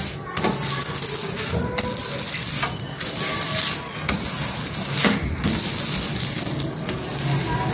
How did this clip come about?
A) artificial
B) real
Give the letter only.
B